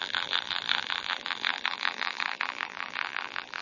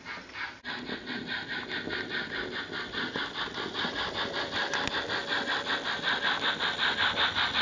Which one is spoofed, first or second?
first